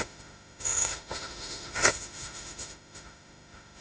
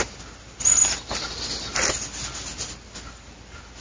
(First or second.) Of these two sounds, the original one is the second